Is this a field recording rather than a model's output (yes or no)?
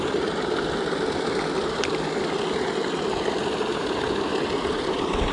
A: yes